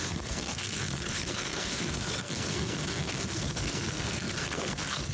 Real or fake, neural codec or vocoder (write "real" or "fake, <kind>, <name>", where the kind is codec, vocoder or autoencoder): fake, codec, SNAC